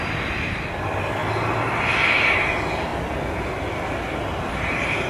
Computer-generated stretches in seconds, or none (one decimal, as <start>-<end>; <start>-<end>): none